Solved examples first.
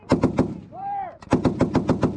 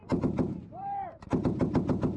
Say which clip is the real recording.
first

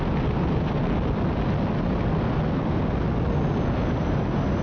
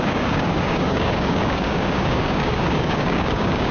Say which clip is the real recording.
first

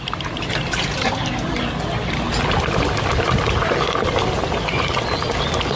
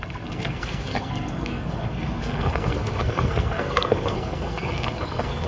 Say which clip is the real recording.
first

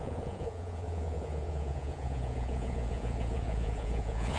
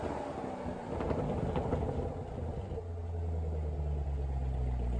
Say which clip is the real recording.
second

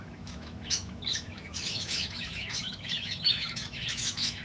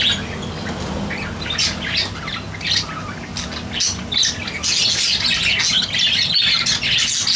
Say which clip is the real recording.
second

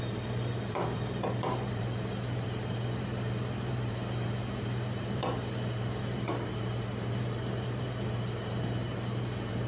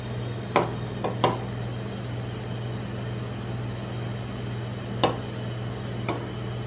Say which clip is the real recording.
second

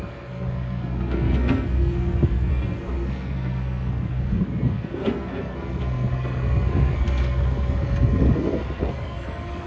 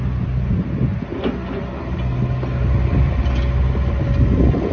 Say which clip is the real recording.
second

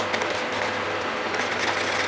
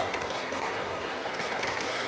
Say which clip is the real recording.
first